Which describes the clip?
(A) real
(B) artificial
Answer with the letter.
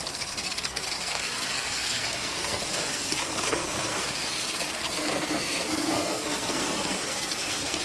B